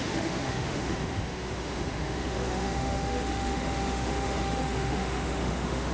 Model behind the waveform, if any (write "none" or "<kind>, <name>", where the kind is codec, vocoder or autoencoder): autoencoder, DAC-VAE